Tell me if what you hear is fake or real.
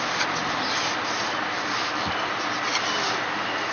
real